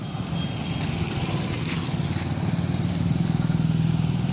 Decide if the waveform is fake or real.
real